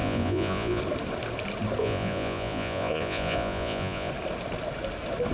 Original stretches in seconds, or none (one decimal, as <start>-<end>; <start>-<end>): 0.8-1.8; 4.1-5.3